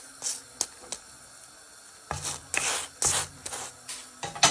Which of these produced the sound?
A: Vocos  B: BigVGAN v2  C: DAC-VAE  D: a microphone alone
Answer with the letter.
D